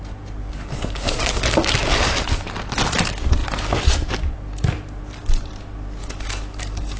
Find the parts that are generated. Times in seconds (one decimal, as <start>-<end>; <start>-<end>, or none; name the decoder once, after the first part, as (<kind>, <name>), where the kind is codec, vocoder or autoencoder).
0.4-2.2 (codec, DAC); 6.0-7.0